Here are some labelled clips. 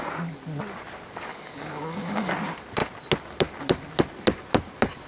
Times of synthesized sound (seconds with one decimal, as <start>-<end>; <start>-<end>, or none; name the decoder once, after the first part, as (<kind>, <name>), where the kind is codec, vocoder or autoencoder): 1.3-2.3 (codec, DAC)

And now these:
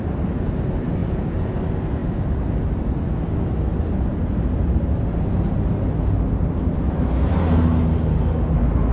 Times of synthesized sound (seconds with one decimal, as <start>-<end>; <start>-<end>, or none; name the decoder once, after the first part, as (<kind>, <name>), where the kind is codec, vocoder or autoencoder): 1.0-1.6 (vocoder, Vocos)

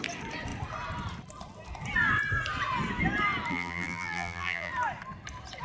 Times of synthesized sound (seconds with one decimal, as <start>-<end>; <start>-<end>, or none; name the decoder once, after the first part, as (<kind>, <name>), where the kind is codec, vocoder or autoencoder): 3.5-4.7 (vocoder, BigVGAN v2)

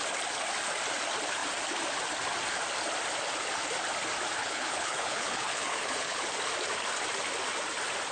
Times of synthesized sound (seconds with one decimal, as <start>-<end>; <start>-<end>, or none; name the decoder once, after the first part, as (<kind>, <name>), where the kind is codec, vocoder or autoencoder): 4.4-6.2 (codec, HILCodec)